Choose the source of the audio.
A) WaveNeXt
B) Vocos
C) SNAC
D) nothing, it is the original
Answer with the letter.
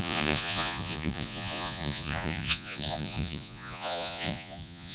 B